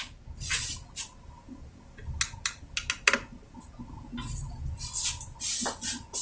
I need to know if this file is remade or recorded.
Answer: recorded